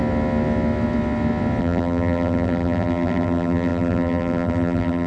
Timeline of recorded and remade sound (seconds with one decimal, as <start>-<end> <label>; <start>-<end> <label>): 0.0-1.6 recorded; 1.6-5.1 remade